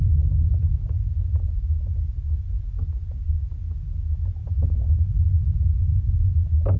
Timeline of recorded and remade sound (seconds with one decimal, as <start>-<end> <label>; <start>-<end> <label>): 0.0-6.8 recorded